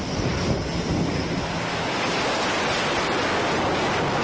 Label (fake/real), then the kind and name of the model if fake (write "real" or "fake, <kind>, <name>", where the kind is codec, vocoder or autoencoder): real